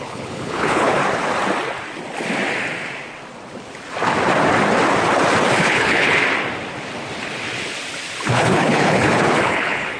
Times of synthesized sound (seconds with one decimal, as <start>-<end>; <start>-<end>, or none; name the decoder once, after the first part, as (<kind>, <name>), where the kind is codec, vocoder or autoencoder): 0.0-1.0 (codec, HILCodec); 5.6-6.2; 8.3-10.0